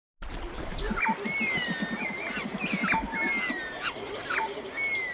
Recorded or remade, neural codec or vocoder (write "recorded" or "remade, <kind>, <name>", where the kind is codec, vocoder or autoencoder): recorded